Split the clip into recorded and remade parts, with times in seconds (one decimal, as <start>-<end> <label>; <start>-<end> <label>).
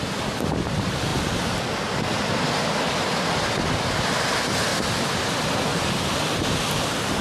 0.0-4.7 recorded; 4.7-6.6 remade; 6.6-7.2 recorded